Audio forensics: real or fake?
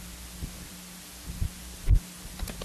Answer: real